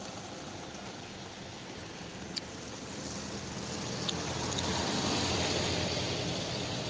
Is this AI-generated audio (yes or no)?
no